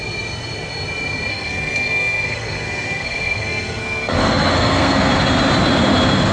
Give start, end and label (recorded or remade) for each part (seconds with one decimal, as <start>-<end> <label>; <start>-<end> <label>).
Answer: 0.0-1.3 recorded; 1.3-5.1 remade; 5.1-6.3 recorded